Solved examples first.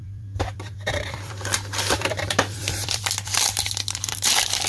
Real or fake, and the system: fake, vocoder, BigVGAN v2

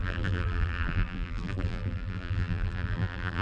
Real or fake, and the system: fake, vocoder, BigVGAN v2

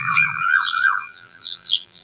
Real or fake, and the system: fake, vocoder, BigVGAN v2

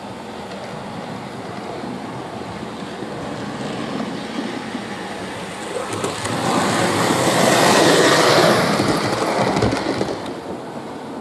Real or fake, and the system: real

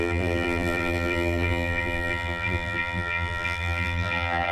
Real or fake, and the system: fake, vocoder, BigVGAN v2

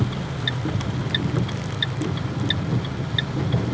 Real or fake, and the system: real